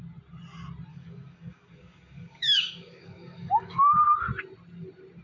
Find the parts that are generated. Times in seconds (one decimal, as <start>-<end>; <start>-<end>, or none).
0.9-3.9